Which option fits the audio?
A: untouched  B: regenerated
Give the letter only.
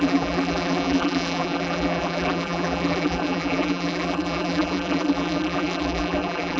B